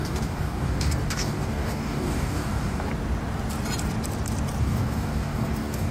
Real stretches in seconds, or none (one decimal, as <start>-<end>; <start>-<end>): 2.9-4.6